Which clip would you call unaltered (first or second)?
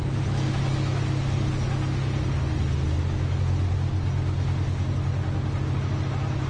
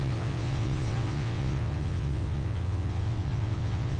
first